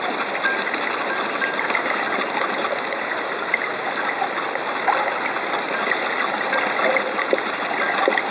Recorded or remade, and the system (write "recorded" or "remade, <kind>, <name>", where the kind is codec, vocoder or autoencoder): recorded